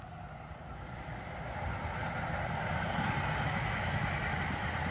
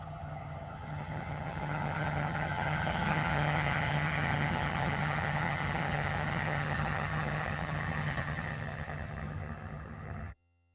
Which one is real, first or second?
first